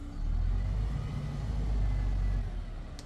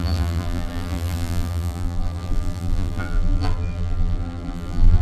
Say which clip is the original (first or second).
first